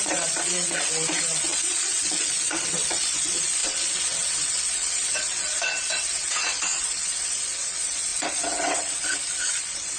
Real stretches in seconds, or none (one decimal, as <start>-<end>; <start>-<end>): none